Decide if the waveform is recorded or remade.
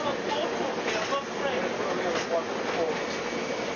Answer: recorded